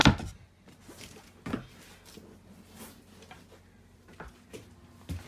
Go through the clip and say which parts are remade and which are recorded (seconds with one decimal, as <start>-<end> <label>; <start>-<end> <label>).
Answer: 0.0-5.3 recorded